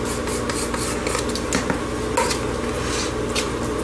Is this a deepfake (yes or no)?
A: no